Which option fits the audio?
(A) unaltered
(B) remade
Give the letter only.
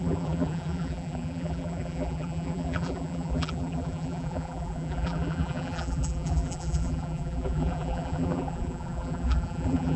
B